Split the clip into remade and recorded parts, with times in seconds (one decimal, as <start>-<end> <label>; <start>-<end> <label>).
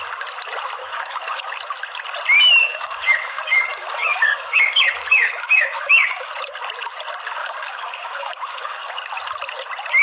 0.0-0.8 recorded; 0.8-1.5 remade; 1.5-2.6 recorded; 2.6-6.3 remade; 6.3-7.4 recorded; 7.4-8.9 remade; 8.9-10.0 recorded